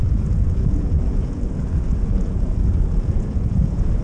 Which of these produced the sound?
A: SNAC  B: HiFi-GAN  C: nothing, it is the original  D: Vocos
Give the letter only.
D